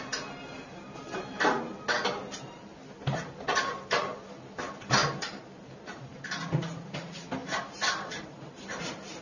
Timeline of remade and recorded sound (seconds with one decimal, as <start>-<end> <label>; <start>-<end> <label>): 0.0-5.0 recorded; 5.0-6.5 remade; 6.5-7.4 recorded; 7.4-9.2 remade